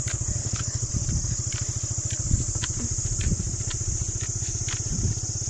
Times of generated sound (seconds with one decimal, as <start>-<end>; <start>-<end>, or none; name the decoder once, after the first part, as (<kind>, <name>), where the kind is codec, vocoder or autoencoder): 0.4-0.9 (codec, HILCodec)